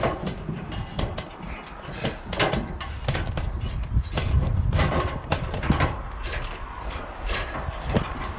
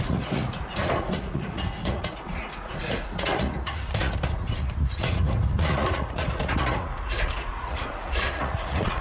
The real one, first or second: first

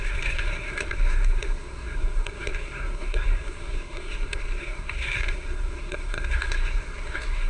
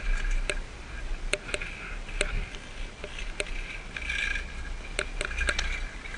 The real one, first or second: second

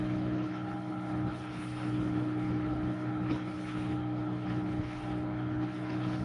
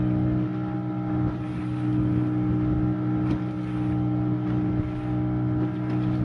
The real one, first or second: second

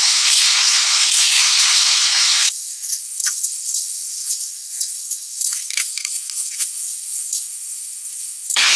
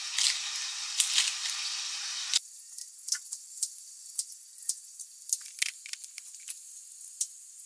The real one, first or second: second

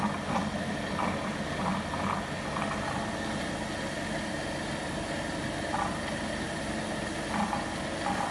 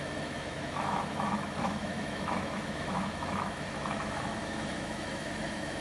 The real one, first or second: first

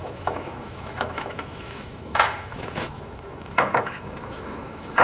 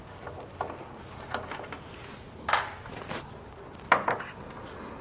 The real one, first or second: second